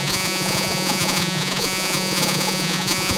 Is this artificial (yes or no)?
yes